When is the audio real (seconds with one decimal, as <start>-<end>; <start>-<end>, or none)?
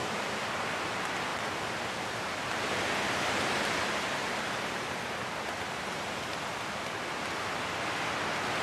0.5-1.3; 5.5-6.5; 7.3-8.6